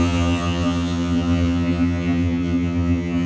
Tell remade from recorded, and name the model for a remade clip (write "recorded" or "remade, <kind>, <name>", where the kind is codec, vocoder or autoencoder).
remade, vocoder, HiFi-GAN